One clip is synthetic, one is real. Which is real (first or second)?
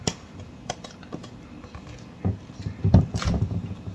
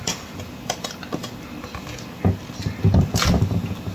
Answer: second